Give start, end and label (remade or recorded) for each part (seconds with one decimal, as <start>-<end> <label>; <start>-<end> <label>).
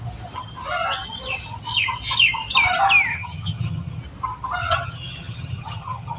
0.0-3.1 recorded; 3.1-4.0 remade; 4.0-4.6 recorded; 4.6-6.2 remade